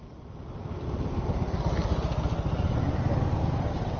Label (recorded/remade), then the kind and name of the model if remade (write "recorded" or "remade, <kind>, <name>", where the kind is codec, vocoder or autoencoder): recorded